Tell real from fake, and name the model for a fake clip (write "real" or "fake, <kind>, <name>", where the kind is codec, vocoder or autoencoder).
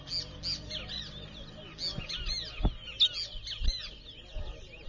real